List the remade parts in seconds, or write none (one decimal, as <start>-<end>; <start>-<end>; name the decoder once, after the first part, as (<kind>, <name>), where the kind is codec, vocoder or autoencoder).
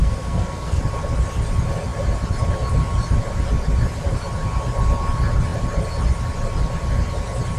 0.0-0.8 (codec, SNAC)